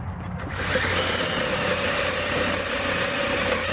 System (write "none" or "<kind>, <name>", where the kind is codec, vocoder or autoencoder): none